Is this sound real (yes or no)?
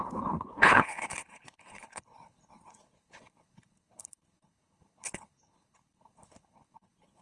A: no